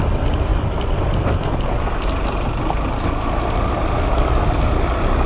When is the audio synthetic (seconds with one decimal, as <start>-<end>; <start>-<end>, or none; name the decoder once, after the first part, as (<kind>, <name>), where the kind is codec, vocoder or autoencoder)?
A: 0.5-1.4 (vocoder, BigVGAN v2)